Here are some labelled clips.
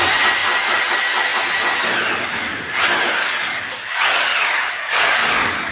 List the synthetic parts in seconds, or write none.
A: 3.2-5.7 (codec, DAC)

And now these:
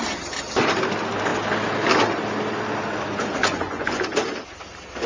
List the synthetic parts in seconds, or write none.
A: 3.4-4.0 (vocoder, Vocos)

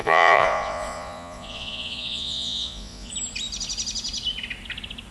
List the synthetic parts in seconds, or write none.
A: 0.0-3.1 (vocoder, Vocos)

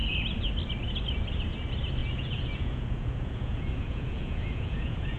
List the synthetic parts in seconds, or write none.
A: 2.0-5.2 (vocoder, Vocos)

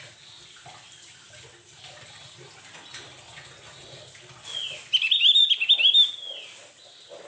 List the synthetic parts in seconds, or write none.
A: none

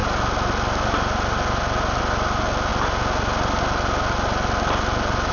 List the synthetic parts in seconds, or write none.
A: none

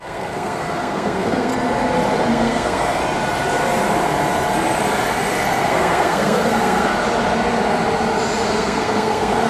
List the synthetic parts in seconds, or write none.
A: 0.0-1.5 (codec, SNAC); 2.3-3.0; 5.6-6.9; 8.5-9.5

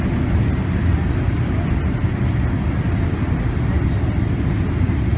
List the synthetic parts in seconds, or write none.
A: none